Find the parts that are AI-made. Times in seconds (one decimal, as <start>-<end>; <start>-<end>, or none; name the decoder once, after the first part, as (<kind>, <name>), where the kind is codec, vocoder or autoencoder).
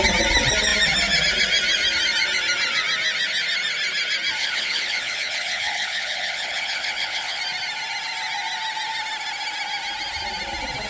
4.4-7.4 (codec, HILCodec)